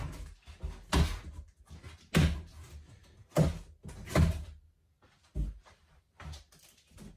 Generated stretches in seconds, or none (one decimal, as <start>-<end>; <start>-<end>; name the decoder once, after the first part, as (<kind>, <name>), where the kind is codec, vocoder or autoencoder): none